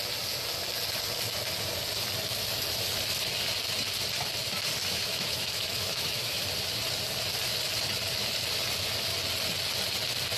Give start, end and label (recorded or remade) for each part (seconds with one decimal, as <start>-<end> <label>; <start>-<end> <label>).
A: 0.0-4.8 recorded; 4.8-6.4 remade; 6.4-10.4 recorded